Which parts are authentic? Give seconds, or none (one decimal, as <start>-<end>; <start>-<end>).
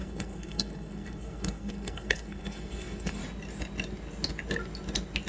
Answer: 3.2-5.3